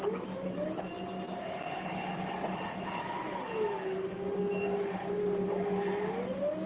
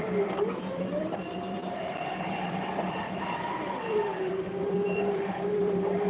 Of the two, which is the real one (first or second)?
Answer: first